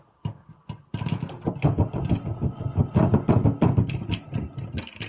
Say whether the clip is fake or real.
real